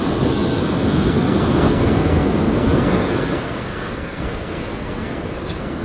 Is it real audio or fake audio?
fake